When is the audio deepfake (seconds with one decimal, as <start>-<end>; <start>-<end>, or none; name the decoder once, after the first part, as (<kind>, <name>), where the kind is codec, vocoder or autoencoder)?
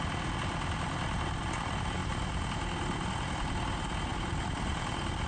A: 4.1-5.3 (vocoder, BigVGAN v2)